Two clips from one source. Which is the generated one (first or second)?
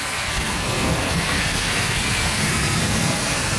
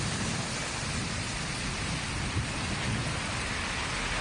first